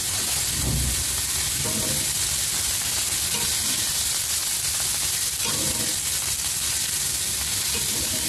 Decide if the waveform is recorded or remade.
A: recorded